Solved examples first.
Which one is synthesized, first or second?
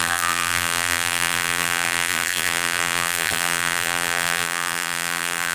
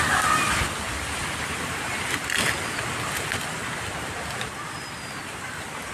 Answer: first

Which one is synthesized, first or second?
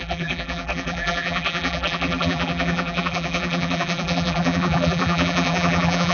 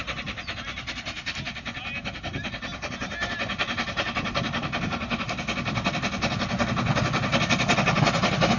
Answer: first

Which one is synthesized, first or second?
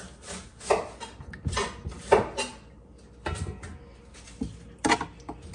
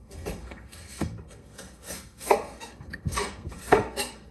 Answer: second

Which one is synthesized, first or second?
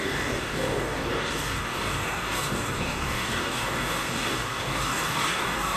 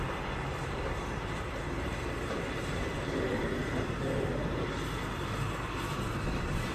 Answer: first